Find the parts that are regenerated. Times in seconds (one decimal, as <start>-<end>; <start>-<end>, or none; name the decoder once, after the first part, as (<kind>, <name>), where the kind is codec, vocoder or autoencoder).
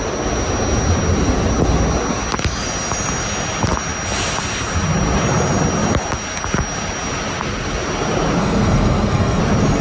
8.4-9.4 (codec, SNAC)